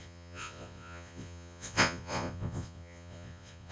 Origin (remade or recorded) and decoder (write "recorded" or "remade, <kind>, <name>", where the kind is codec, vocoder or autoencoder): remade, vocoder, Vocos